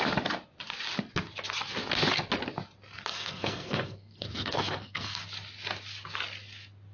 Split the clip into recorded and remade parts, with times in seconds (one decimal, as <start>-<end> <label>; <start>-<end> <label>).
0.0-3.1 recorded; 3.1-5.2 remade; 5.2-6.9 recorded